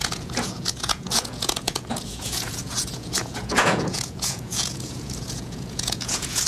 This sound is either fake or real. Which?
fake